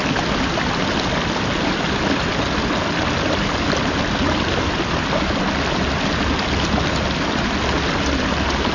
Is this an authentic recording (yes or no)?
yes